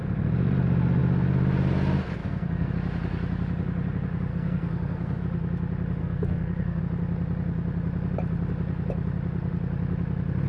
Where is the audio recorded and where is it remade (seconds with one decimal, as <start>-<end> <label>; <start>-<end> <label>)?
0.0-2.2 recorded; 2.2-2.7 remade; 2.7-4.3 recorded; 4.3-5.2 remade; 5.2-6.0 recorded; 6.0-6.8 remade; 6.8-10.5 recorded